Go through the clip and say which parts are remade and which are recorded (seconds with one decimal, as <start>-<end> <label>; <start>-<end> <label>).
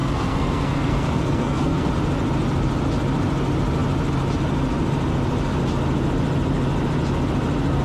0.0-1.9 remade; 1.9-7.8 recorded